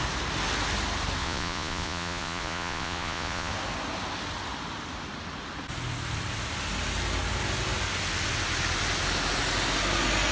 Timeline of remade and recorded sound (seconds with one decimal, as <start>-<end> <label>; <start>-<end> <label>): 0.0-1.2 recorded; 1.2-3.5 remade; 3.5-10.3 recorded